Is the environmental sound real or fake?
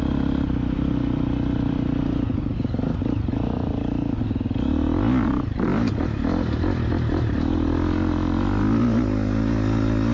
real